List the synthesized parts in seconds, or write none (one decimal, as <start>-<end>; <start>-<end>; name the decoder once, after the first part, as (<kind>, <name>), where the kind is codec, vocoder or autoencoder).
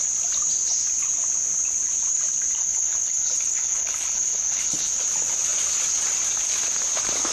2.6-4.9 (codec, HILCodec)